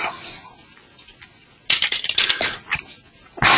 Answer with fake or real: real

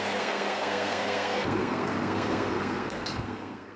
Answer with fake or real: fake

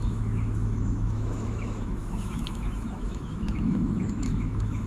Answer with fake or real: fake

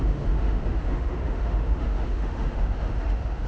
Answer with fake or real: fake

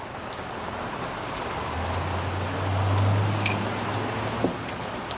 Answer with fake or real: real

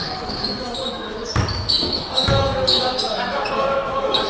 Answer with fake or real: fake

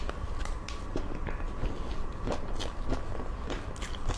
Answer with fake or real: real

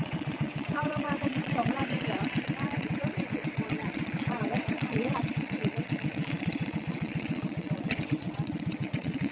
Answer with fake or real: fake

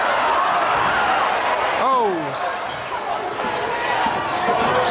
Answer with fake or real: real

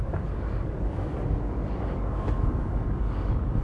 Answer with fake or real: fake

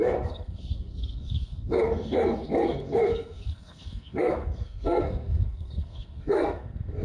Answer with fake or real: fake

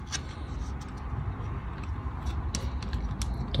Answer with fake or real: real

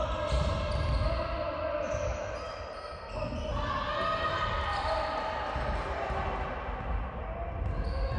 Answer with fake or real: real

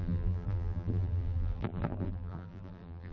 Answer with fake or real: fake